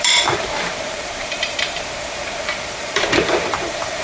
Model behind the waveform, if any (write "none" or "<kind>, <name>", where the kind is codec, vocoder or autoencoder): vocoder, BigVGAN v2